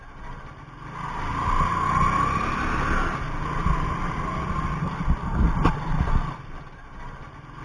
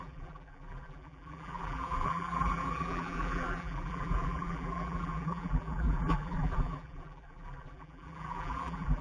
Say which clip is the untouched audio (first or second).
first